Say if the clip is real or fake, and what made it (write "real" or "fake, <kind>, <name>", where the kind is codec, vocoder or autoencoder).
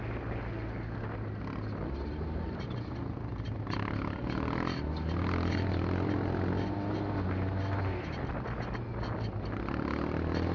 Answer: real